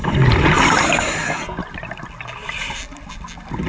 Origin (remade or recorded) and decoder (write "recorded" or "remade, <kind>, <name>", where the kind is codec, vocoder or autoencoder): recorded